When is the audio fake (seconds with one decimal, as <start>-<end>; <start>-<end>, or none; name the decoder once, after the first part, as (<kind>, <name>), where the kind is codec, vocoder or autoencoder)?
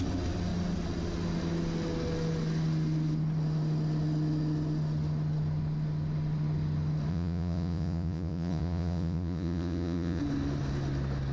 7.1-10.2 (vocoder, Vocos)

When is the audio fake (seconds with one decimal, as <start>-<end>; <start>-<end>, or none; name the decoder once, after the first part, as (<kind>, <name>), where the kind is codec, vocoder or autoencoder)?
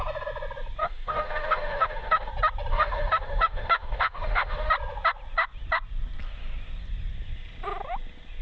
0.8-2.3 (autoencoder, DAC-VAE); 2.7-4.7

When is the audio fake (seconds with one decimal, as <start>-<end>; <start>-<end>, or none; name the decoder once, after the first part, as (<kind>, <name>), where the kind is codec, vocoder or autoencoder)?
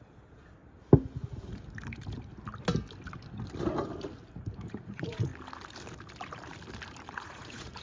0.0-0.6 (vocoder, Vocos); 4.7-5.3; 7.1-7.8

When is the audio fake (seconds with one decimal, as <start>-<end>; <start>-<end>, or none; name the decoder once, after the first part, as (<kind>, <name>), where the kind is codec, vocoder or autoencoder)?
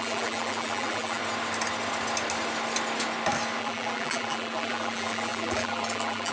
0.0-1.2 (vocoder, BigVGAN v2); 3.6-6.3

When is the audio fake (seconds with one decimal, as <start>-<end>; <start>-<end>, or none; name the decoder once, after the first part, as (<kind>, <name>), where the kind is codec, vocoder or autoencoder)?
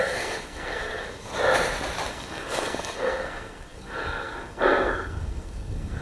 0.0-1.3 (codec, SNAC); 2.1-6.0